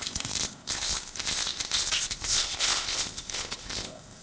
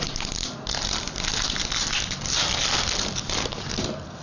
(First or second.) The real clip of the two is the second